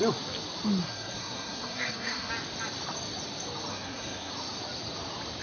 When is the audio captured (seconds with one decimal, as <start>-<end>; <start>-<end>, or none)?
0.0-0.8; 2.3-3.7; 4.3-5.4